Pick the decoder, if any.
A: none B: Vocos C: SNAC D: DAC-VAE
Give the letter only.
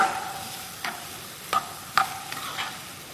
A